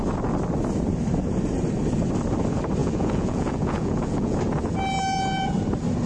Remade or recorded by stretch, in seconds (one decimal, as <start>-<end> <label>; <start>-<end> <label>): 0.0-2.8 recorded; 2.8-4.4 remade; 4.4-6.1 recorded